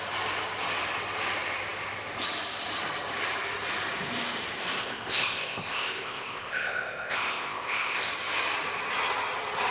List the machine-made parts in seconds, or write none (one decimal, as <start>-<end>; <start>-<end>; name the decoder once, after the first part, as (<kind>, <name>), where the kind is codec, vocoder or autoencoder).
4.8-8.1 (codec, ZipCodec)